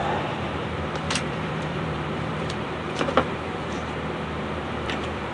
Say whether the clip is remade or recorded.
remade